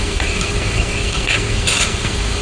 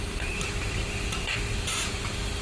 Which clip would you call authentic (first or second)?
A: second